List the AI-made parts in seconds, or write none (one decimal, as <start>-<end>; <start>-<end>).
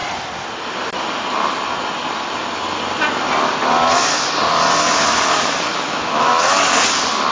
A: 5.7-6.7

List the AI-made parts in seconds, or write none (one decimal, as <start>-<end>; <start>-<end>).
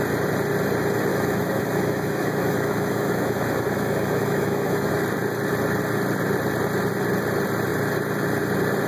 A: 1.1-4.9